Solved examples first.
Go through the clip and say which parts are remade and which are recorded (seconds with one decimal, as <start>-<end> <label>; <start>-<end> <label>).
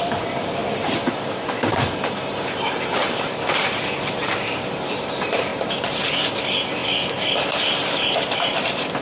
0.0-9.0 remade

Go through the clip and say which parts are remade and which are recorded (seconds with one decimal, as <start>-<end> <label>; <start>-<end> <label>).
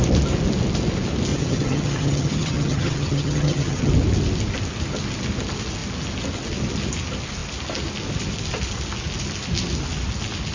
0.0-1.3 recorded; 1.3-3.9 remade; 3.9-10.5 recorded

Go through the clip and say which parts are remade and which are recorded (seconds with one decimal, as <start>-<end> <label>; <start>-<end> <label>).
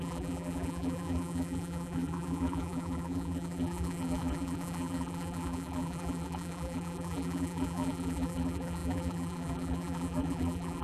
0.0-10.8 remade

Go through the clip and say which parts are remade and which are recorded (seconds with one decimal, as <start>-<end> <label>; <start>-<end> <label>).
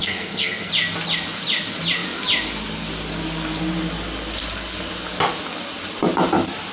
0.0-0.7 remade; 0.7-6.7 recorded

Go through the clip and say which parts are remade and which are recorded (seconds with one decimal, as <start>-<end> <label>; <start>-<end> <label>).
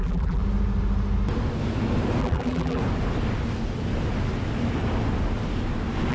0.0-0.4 remade; 0.4-2.2 recorded; 2.2-2.8 remade; 2.8-6.1 recorded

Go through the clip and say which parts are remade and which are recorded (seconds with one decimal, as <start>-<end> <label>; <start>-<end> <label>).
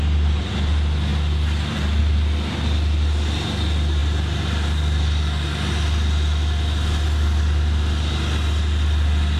0.0-9.4 recorded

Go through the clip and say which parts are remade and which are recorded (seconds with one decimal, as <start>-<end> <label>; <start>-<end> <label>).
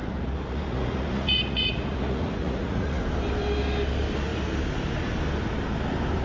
0.0-3.0 remade; 3.0-6.2 recorded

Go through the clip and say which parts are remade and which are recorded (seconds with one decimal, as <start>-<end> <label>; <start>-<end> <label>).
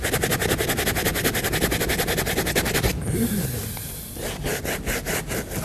0.0-5.6 recorded